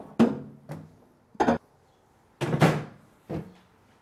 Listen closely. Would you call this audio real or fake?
real